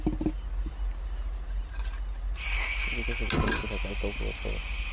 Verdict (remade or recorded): recorded